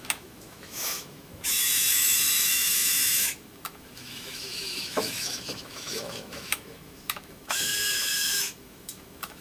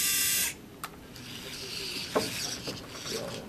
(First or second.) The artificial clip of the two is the first